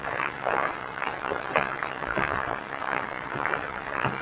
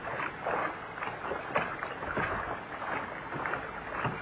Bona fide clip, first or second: second